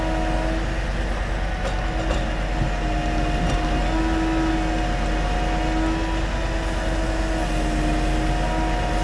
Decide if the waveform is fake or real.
real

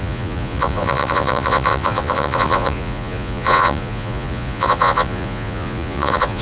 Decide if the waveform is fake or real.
fake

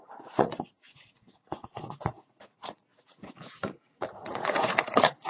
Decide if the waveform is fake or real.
fake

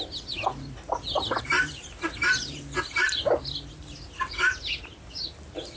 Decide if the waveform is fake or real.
real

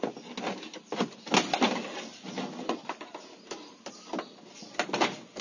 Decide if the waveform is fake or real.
real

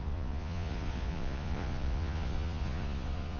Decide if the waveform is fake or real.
fake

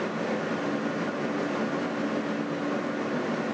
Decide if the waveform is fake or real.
real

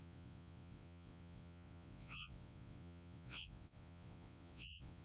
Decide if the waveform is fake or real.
fake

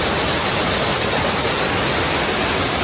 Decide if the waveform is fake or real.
real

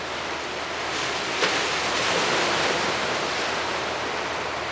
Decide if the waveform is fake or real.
real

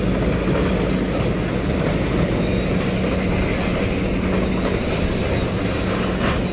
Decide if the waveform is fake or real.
real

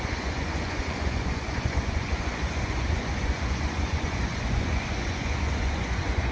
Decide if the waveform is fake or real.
fake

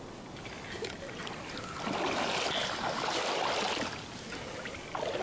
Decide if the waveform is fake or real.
real